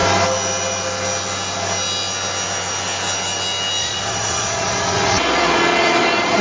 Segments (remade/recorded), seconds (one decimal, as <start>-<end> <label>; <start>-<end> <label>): 0.0-3.8 recorded; 3.8-6.4 remade